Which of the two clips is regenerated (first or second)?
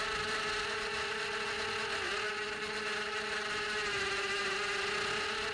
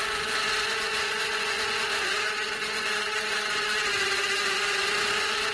second